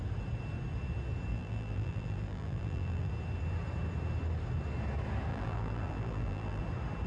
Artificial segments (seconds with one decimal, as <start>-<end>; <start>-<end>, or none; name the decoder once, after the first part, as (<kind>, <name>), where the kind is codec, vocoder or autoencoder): 1.3-3.1 (vocoder, BigVGAN v2); 5.3-6.6